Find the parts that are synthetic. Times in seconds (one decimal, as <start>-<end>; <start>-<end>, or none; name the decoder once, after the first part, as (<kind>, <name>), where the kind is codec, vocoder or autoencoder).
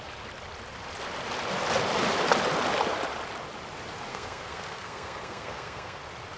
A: 4.1-6.0 (codec, SNAC)